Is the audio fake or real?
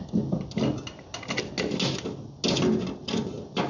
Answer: real